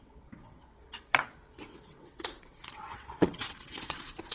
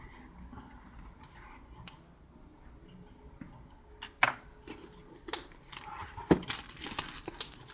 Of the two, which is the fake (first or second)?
first